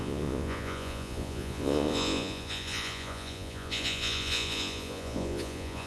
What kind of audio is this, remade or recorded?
remade